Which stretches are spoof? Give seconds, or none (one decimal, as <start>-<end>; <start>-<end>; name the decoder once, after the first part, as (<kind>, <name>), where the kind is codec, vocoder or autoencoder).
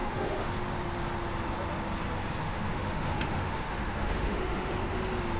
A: 0.0-0.5 (autoencoder, DAC-VAE); 2.4-5.0